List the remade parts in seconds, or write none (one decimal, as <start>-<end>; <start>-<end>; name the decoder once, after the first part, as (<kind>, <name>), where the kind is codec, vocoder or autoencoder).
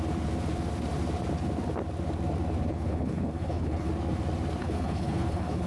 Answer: 2.7-3.9 (codec, HILCodec); 4.6-5.7